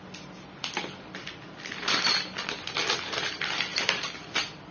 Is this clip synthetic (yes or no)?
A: no